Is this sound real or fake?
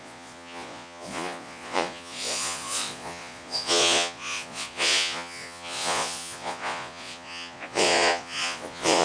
fake